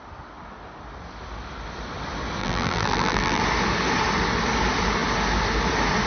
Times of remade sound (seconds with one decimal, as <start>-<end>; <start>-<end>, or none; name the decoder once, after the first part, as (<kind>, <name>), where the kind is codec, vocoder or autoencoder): 2.4-3.4 (vocoder, BigVGAN v2)